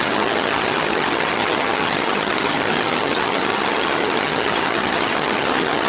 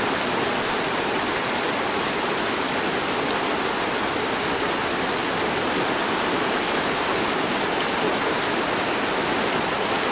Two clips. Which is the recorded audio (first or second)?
second